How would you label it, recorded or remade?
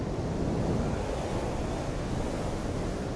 recorded